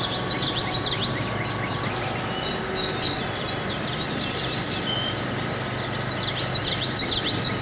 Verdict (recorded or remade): recorded